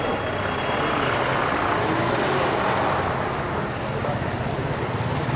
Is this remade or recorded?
recorded